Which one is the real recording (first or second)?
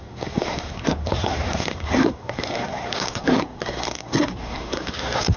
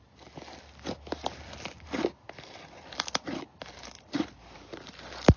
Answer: second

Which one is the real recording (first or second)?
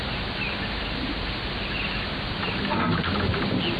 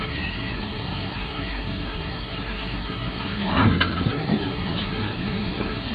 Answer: first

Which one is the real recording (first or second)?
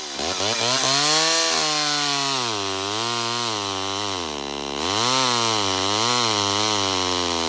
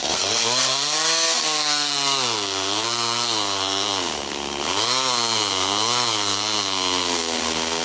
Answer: first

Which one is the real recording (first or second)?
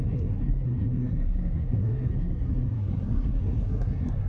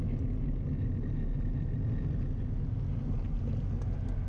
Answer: second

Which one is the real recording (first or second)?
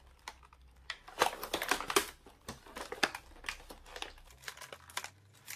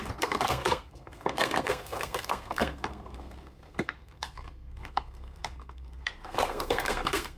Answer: first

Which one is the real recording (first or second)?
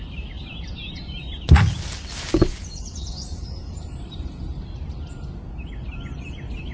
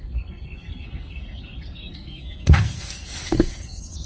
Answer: first